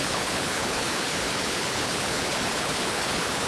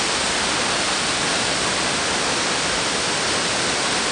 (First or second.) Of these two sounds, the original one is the second